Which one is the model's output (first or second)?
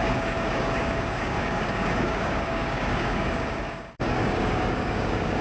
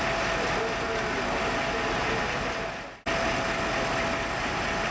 first